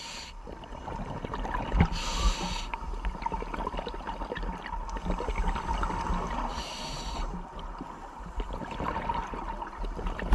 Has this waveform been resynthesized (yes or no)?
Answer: no